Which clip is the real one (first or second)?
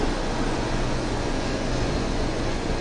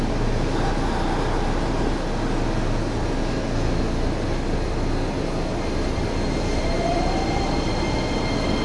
second